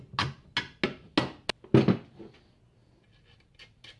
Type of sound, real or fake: real